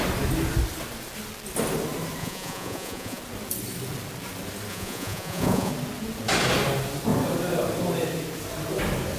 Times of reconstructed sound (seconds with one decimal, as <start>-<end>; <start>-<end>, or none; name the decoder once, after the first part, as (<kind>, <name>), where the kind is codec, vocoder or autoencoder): 2.2-3.2 (vocoder, Vocos); 4.7-5.7